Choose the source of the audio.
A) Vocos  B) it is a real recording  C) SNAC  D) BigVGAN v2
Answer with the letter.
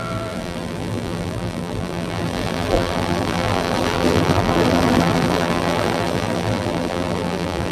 D